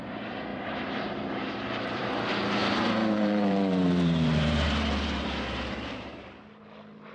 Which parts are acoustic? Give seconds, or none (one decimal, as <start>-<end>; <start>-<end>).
0.0-0.5; 2.1-2.6; 6.3-7.1